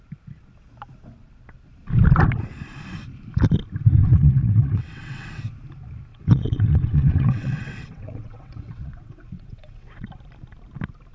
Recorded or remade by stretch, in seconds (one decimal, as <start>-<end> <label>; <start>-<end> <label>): 0.0-4.1 recorded; 4.1-5.4 remade; 5.4-6.1 recorded; 6.1-10.1 remade; 10.1-11.1 recorded